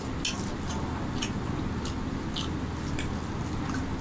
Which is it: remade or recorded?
recorded